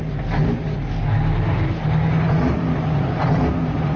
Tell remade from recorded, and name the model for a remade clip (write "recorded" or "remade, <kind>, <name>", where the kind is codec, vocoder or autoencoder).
recorded